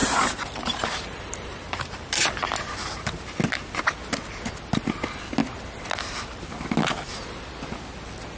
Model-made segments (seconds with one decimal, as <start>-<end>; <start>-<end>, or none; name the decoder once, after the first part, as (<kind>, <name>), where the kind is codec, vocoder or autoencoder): 0.0-2.2 (vocoder, BigVGAN v2)

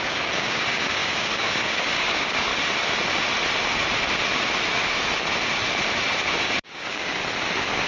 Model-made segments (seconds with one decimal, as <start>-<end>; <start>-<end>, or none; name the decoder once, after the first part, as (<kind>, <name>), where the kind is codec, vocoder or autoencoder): 0.0-2.5 (codec, DAC); 6.3-7.2